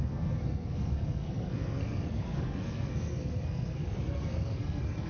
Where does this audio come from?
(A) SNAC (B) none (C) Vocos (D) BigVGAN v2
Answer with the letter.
A